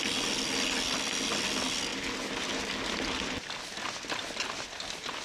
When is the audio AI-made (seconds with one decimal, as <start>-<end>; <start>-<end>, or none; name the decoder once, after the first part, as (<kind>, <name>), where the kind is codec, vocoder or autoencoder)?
none